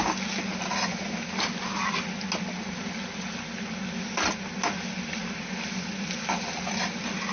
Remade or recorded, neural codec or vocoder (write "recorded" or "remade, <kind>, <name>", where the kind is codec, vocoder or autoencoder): recorded